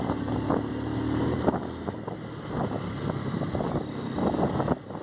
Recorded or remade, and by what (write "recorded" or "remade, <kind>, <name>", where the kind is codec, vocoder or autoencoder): recorded